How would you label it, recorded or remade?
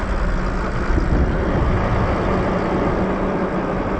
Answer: recorded